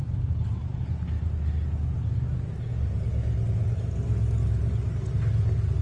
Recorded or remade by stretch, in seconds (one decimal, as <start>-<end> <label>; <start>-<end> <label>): 0.0-5.8 recorded